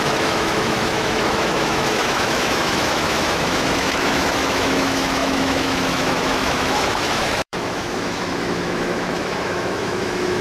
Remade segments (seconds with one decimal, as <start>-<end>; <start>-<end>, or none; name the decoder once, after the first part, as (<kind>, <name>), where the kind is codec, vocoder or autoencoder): 0.0-10.4 (autoencoder, DAC-VAE)